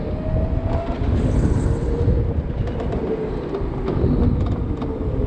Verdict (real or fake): real